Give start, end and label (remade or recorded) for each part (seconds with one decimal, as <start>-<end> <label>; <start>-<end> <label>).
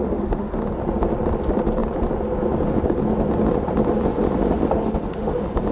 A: 0.0-0.6 remade; 0.6-4.8 recorded; 4.8-5.3 remade; 5.3-5.7 recorded